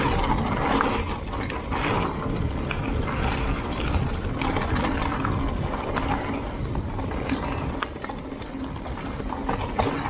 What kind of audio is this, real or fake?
real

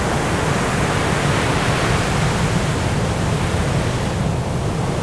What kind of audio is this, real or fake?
real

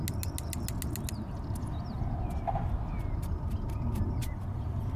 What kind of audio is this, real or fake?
real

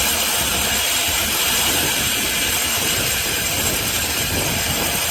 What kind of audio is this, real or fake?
real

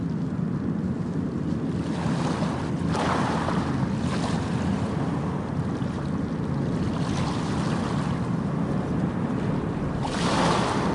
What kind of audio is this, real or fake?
real